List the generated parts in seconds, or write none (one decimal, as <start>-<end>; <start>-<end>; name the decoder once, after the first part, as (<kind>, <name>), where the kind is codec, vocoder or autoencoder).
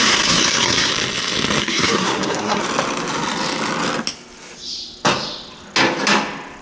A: 0.0-0.9 (codec, SNAC); 1.6-2.6